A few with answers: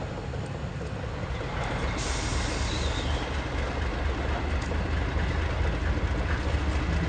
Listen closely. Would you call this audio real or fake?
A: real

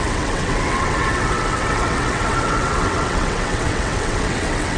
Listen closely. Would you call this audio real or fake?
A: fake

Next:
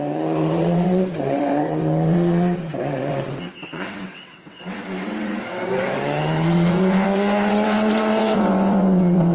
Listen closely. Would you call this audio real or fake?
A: fake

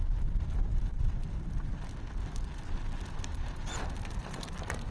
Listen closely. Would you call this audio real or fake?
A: real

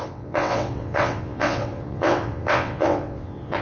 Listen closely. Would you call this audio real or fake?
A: fake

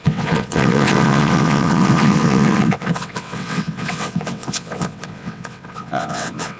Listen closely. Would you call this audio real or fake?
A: fake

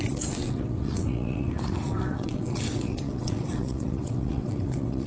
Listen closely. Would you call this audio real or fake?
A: fake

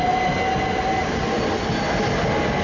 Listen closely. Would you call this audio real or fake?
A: real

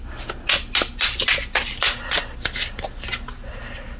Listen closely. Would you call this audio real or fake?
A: real